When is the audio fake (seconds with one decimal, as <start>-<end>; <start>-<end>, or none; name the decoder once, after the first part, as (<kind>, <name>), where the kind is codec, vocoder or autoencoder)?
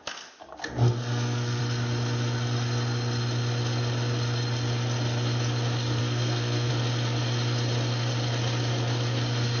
0.6-1.6 (codec, SNAC); 6.0-6.7